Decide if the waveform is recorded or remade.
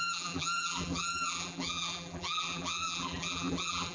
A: remade